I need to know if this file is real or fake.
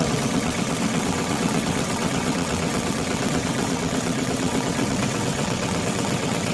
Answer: fake